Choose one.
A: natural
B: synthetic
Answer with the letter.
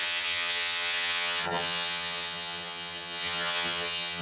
B